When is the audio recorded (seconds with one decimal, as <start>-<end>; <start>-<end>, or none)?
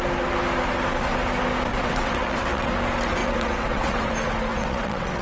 0.0-1.7; 2.7-3.2; 4.1-4.5